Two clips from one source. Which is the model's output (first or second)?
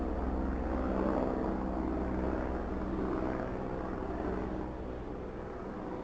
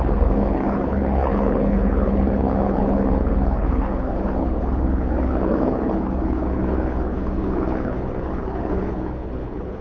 second